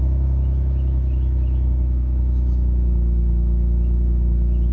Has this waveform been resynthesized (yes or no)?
yes